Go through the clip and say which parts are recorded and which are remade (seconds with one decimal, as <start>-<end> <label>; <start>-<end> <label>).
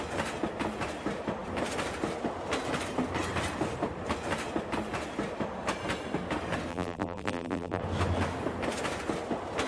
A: 0.0-6.7 recorded; 6.7-7.8 remade; 7.8-9.7 recorded